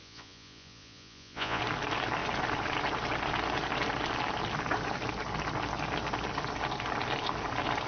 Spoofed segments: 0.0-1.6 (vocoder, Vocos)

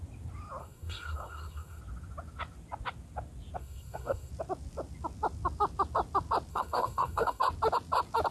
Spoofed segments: 0.6-1.8 (codec, SNAC); 3.6-4.3; 6.5-7.4

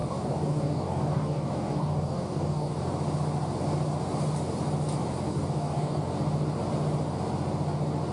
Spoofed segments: 0.0-2.8 (codec, DAC); 5.3-6.0

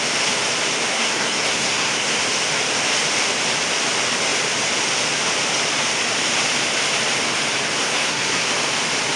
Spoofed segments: 0.9-2.2 (codec, SNAC); 7.8-8.5

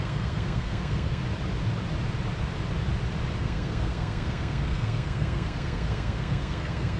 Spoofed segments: 0.0-1.2 (codec, SNAC); 3.4-7.0

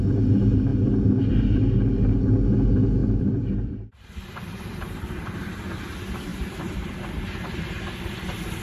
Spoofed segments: 3.0-3.7 (vocoder, BigVGAN v2); 6.3-7.1

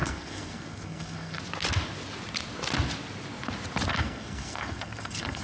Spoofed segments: 0.0-1.4 (codec, SNAC); 3.9-5.4